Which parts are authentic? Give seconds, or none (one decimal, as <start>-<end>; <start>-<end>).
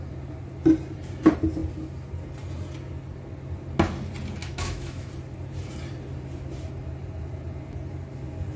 0.0-4.4; 5.1-8.6